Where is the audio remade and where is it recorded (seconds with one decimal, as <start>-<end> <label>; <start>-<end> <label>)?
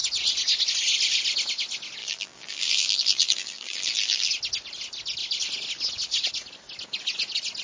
0.0-2.0 recorded; 2.0-4.3 remade; 4.3-7.6 recorded